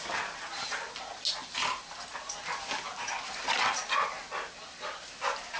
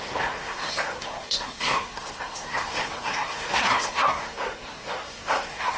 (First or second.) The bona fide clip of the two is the first